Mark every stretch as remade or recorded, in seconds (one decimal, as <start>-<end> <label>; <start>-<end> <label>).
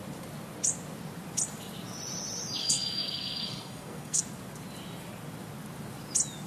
0.0-2.6 recorded; 2.6-4.2 remade; 4.2-6.5 recorded